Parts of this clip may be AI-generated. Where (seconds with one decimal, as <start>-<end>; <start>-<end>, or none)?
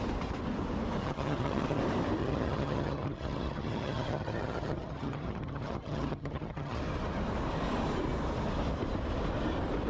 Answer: 1.0-1.8; 2.2-6.8